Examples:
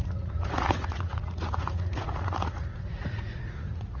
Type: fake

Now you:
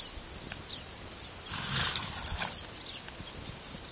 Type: real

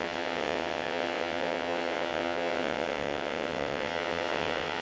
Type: fake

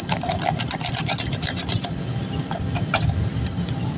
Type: real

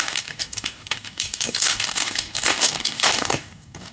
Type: fake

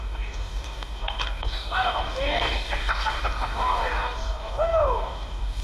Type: fake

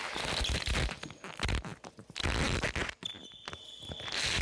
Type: real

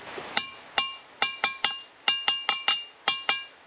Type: real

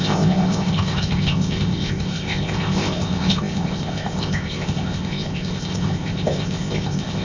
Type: fake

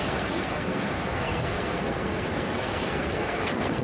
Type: fake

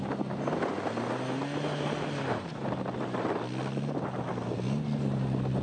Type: real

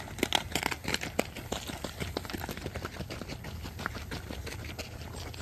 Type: real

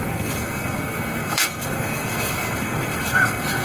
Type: fake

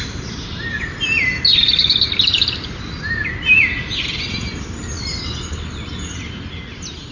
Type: real